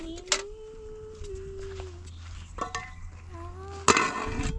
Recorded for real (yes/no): yes